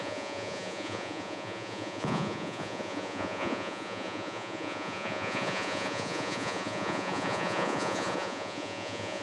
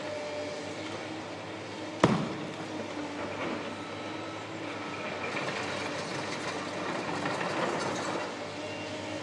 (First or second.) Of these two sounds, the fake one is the first